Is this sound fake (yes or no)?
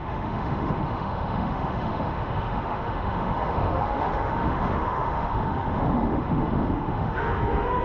yes